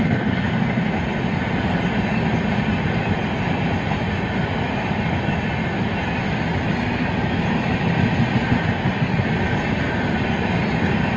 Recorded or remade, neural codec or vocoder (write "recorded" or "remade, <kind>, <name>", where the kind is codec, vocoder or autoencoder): recorded